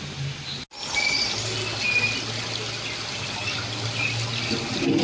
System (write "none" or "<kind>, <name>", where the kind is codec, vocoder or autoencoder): none